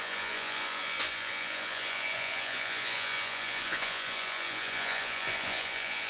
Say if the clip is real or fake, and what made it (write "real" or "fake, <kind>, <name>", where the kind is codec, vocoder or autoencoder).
fake, vocoder, Vocos